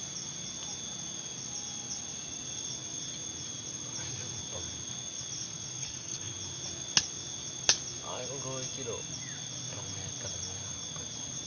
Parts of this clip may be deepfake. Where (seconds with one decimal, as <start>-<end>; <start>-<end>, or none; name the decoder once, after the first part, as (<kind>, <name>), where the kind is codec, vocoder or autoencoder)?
5.8-6.3 (codec, HILCodec)